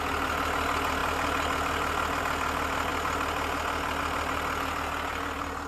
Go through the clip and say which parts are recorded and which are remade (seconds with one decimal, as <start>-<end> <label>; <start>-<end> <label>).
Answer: 0.0-5.7 recorded